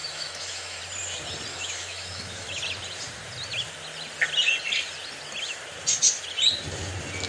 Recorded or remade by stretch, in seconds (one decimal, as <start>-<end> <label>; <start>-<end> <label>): 0.0-0.8 remade; 0.8-1.5 recorded; 1.5-2.6 remade; 2.6-7.3 recorded